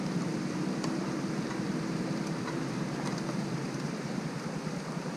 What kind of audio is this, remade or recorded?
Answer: remade